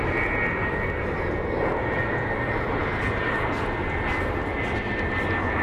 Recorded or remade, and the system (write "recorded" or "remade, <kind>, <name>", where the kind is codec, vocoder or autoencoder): recorded